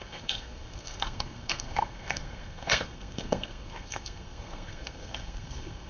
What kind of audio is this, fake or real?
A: fake